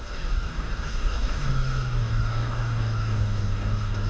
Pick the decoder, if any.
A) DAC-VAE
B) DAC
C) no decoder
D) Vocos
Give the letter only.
B